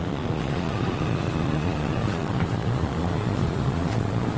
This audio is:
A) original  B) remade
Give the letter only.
B